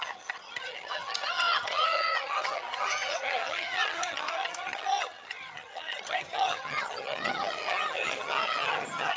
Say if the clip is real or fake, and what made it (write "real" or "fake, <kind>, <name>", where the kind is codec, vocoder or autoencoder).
fake, vocoder, HiFi-GAN